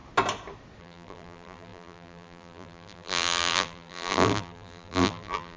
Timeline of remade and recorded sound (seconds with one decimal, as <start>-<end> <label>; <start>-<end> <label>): 0.0-0.8 recorded; 0.8-5.6 remade

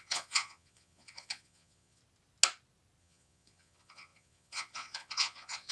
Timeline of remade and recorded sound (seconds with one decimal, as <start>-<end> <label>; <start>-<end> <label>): 0.0-2.0 remade; 2.0-3.0 recorded; 3.0-5.7 remade

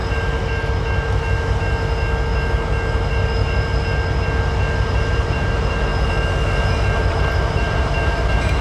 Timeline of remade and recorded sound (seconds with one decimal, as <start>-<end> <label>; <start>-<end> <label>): 0.0-4.9 recorded; 4.9-5.9 remade; 5.9-7.1 recorded; 7.1-8.6 remade